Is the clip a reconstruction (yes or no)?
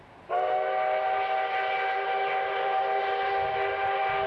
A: no